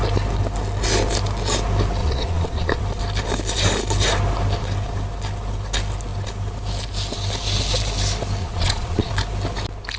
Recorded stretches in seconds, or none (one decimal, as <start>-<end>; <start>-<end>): 0.0-2.0; 2.8-8.4; 9.1-10.0